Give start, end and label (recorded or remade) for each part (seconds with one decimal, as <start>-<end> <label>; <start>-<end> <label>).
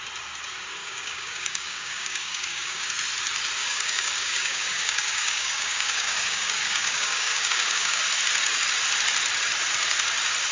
0.0-0.8 recorded; 0.8-2.9 remade; 2.9-3.6 recorded; 3.6-8.0 remade; 8.0-10.5 recorded